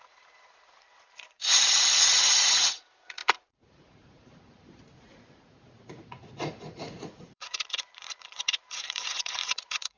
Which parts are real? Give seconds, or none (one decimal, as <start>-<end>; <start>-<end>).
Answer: none